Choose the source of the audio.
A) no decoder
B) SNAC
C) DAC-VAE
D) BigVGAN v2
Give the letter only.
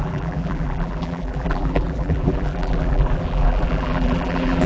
D